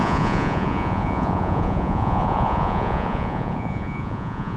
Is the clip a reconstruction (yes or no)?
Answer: yes